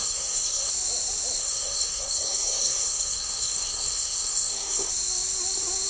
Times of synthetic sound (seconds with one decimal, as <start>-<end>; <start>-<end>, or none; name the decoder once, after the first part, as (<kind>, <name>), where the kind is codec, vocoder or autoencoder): 0.0-0.7 (codec, SNAC); 1.4-4.9

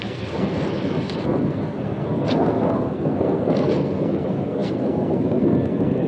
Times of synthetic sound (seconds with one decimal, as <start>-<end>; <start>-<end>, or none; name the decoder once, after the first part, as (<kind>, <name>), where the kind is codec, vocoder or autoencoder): 0.0-6.1 (codec, SNAC)

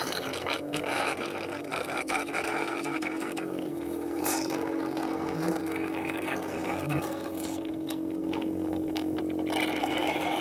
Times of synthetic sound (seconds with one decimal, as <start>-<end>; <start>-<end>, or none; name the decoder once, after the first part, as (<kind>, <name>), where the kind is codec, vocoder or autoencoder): 0.0-9.2 (codec, SNAC); 9.8-10.4

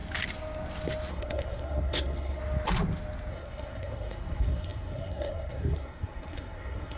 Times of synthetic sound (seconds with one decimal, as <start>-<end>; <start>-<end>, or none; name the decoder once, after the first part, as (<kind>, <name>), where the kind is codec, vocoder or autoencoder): 1.1-2.4 (codec, SNAC); 3.3-7.0

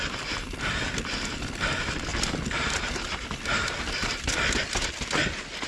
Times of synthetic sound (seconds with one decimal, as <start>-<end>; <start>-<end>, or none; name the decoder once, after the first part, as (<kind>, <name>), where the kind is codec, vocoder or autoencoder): none